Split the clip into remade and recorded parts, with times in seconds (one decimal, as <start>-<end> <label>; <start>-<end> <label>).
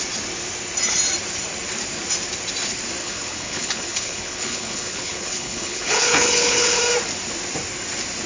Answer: 0.0-3.0 recorded; 3.0-6.8 remade; 6.8-8.3 recorded